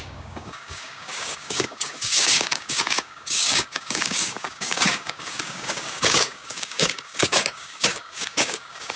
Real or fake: fake